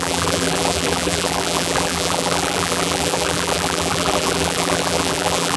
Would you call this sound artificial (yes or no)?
yes